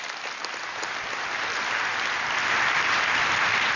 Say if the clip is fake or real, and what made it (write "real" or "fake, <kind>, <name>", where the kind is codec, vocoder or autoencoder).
real